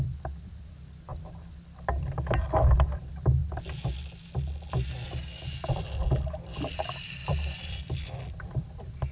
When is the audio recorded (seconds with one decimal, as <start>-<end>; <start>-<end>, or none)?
3.4-6.1